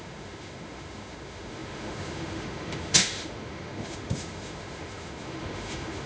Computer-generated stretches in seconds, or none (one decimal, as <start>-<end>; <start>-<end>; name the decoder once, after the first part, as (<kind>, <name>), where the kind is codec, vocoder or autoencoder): 0.0-6.1 (autoencoder, DAC-VAE)